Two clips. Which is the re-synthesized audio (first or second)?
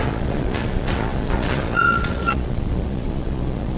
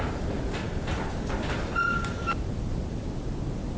first